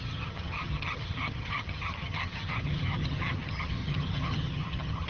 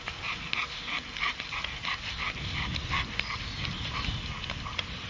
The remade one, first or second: first